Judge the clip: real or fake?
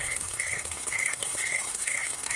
fake